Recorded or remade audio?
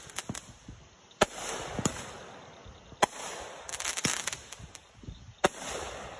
recorded